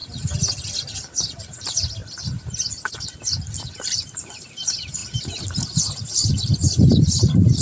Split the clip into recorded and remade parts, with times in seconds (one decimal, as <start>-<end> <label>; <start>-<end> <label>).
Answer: 0.0-1.4 recorded; 1.4-2.0 remade; 2.0-3.6 recorded; 3.6-5.0 remade; 5.0-5.8 recorded; 5.8-7.6 remade